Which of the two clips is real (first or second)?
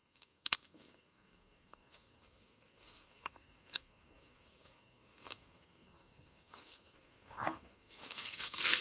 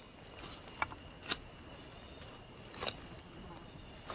second